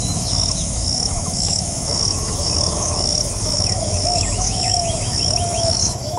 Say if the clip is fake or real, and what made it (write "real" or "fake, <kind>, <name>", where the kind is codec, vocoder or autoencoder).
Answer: fake, autoencoder, DAC-VAE